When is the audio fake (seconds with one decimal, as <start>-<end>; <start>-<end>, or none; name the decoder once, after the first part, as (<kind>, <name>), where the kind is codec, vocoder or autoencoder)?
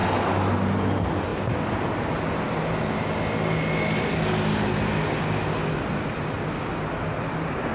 none